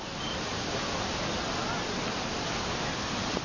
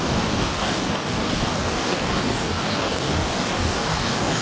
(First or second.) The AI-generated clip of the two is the second